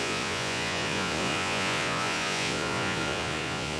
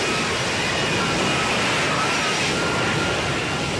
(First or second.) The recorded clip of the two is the second